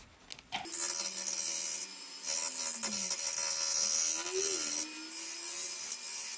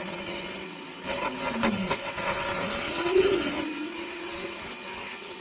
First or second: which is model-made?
second